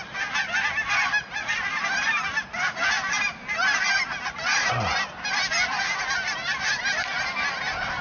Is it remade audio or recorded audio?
recorded